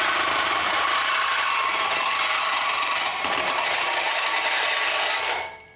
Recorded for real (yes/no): yes